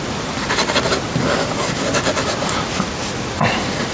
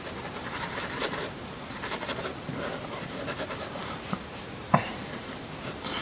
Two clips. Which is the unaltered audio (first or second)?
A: first